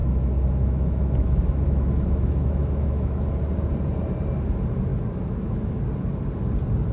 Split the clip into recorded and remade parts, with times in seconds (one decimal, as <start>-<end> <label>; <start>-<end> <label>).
0.0-3.3 remade; 3.3-4.9 recorded; 4.9-5.8 remade; 5.8-6.9 recorded